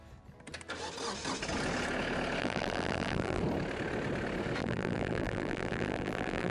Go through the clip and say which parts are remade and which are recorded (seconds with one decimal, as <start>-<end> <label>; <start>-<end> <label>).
0.0-2.4 recorded; 2.4-3.4 remade; 3.4-4.6 recorded; 4.6-6.5 remade